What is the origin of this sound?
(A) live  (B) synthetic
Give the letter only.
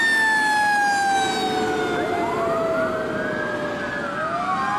A